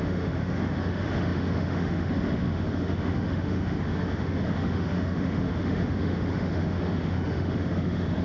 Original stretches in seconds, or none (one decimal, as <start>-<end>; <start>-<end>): none